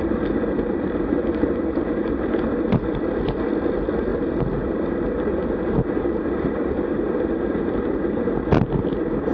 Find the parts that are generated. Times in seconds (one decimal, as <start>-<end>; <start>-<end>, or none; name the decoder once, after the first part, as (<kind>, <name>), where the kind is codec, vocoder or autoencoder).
0.0-9.3 (vocoder, BigVGAN v2)

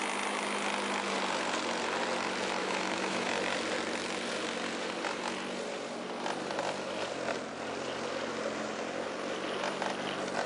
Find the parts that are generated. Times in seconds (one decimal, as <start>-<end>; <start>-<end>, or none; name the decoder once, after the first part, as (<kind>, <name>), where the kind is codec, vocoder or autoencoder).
2.6-3.3 (autoencoder, DAC-VAE)

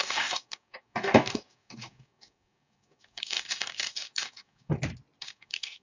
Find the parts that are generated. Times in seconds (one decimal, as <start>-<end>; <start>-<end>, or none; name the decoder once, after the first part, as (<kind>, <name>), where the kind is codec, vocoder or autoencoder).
0.0-4.7 (codec, DAC); 5.2-5.8

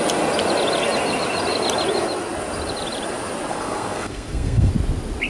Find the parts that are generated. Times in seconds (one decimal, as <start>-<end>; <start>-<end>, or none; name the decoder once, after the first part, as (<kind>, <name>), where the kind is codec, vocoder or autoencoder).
3.5-4.7 (codec, SNAC)